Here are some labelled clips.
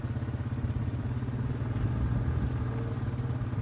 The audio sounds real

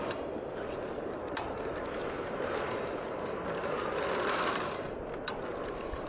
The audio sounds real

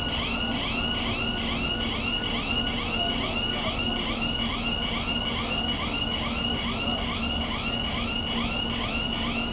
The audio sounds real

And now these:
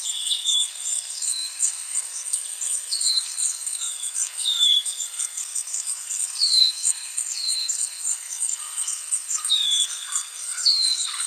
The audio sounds fake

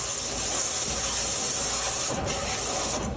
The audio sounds real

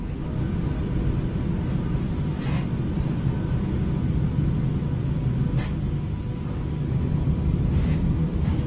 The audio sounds real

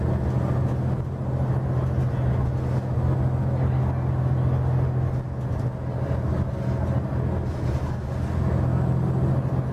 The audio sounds real